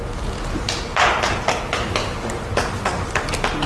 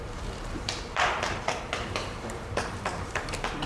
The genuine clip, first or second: first